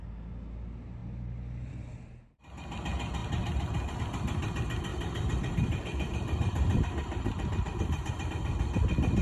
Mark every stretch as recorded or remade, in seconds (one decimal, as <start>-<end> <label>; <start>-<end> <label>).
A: 0.0-4.9 recorded; 4.9-8.3 remade; 8.3-9.2 recorded